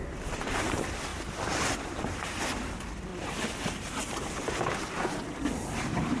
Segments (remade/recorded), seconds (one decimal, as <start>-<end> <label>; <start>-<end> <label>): 0.0-3.1 remade; 3.1-3.9 recorded; 3.9-6.2 remade